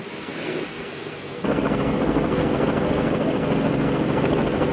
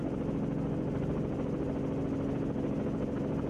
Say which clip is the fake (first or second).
first